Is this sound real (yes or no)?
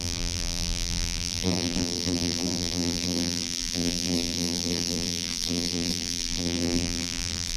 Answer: no